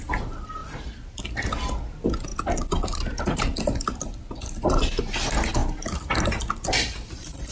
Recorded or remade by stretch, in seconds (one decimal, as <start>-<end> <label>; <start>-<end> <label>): 0.0-0.6 recorded; 0.6-1.2 remade; 1.2-2.3 recorded; 2.3-4.2 remade; 4.2-5.6 recorded; 5.6-6.4 remade; 6.4-7.5 recorded

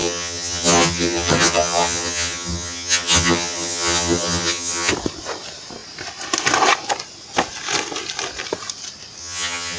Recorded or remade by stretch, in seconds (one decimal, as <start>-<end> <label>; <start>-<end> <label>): 0.0-4.9 remade; 4.9-9.2 recorded; 9.2-9.8 remade

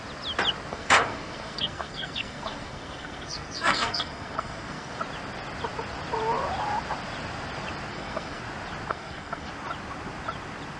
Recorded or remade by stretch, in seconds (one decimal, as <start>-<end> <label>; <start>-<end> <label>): 0.0-0.7 recorded; 0.7-5.0 remade; 5.0-7.9 recorded; 7.9-8.4 remade; 8.4-8.9 recorded; 8.9-9.5 remade; 9.5-10.8 recorded

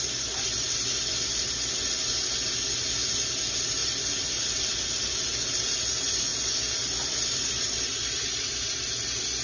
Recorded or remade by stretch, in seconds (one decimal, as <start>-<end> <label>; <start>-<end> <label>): 0.0-3.8 recorded; 3.8-4.4 remade; 4.4-6.3 recorded; 6.3-8.8 remade; 8.8-9.4 recorded

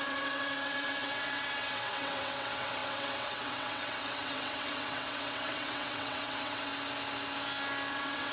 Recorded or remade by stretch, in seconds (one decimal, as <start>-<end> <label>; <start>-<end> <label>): 0.0-6.7 remade; 6.7-7.9 recorded; 7.9-8.3 remade